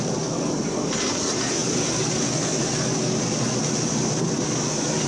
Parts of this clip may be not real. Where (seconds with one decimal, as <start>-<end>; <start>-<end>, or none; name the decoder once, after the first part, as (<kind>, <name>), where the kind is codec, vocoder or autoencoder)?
none